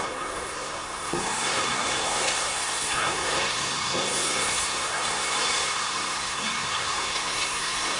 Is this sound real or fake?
fake